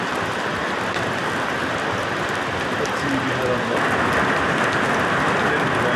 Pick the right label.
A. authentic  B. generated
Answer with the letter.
A